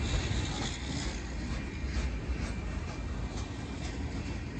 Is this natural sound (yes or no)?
yes